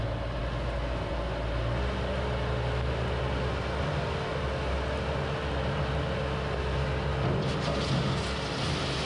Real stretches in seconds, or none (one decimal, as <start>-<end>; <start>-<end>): 0.0-9.1